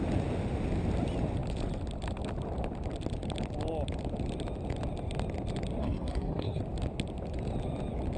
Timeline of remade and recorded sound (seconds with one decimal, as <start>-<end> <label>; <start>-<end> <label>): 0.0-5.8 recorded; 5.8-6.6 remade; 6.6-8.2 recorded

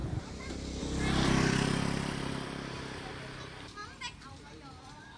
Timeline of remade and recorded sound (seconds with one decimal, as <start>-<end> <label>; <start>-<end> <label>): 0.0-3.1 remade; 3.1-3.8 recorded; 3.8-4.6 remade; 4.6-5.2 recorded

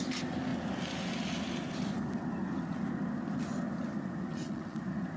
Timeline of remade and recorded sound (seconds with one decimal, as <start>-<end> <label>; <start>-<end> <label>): 0.0-4.3 recorded; 4.3-4.8 remade; 4.8-5.2 recorded

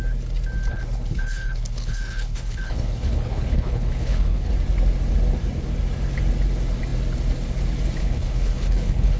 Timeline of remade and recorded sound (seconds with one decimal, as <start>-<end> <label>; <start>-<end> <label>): 0.0-0.7 recorded; 0.7-4.5 remade; 4.5-8.0 recorded; 8.0-9.2 remade

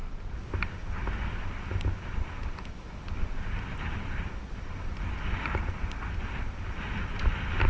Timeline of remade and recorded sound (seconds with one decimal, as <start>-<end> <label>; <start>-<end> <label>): 0.0-7.7 recorded